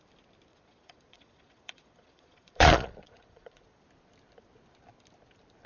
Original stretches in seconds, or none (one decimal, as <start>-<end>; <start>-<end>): 0.0-0.5; 3.9-5.7